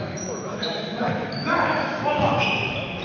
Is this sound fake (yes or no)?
yes